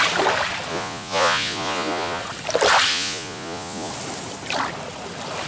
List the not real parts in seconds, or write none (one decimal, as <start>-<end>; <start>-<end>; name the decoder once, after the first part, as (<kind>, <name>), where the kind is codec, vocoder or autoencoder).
0.7-2.2 (vocoder, Vocos); 2.9-3.9